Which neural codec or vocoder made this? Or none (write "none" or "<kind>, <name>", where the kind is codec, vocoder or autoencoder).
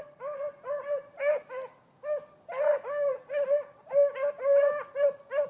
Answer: none